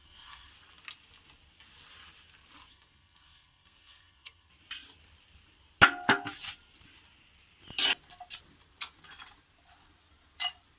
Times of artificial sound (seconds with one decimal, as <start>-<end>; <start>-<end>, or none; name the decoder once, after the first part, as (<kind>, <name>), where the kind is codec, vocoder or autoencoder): 0.0-0.5 (codec, SNAC); 2.7-4.5